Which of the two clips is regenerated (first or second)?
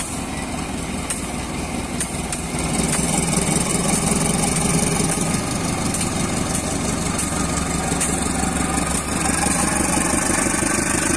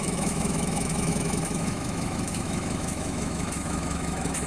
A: second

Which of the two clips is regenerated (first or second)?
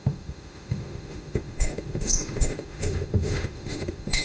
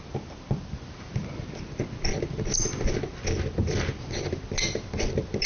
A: first